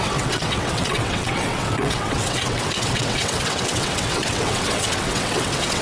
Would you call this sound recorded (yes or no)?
no